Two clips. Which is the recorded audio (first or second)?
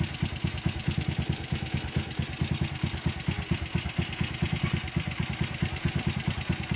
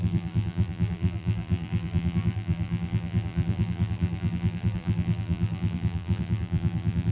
first